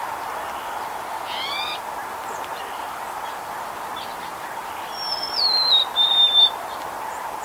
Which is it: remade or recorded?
recorded